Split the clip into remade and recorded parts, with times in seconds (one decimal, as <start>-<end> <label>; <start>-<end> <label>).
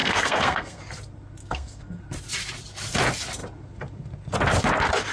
0.0-0.8 remade; 0.8-1.4 recorded; 1.4-2.0 remade; 2.0-5.1 recorded